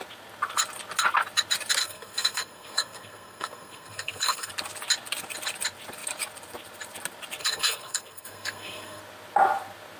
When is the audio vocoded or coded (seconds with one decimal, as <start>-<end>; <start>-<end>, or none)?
1.8-4.5; 7.4-9.0